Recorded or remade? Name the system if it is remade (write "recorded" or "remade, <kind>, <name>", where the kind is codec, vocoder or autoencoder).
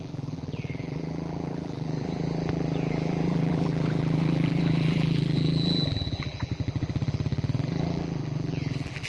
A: remade, vocoder, BigVGAN v2